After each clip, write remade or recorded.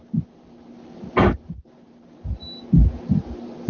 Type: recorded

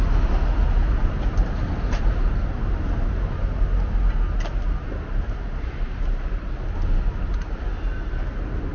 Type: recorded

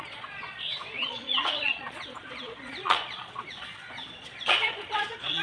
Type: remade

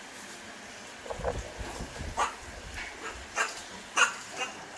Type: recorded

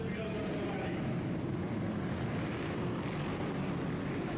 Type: recorded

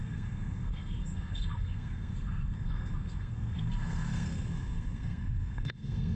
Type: remade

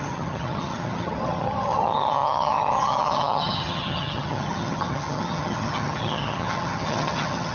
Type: remade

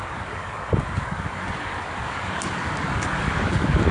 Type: remade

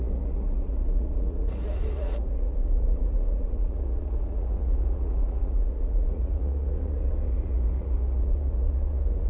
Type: remade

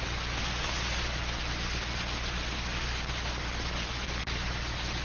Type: recorded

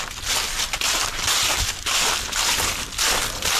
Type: recorded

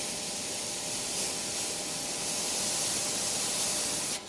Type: recorded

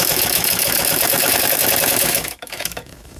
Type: remade